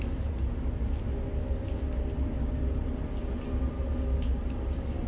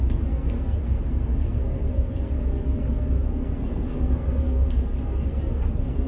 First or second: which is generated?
second